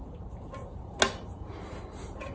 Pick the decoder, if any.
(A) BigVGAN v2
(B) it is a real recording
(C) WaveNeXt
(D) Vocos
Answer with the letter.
B